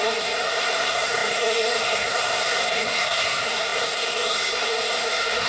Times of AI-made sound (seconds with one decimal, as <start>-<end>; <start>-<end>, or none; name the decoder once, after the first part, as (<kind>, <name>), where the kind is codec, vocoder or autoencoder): 0.0-5.5 (codec, SNAC)